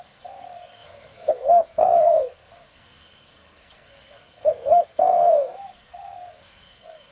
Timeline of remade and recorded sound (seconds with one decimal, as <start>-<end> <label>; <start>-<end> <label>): 0.0-7.1 remade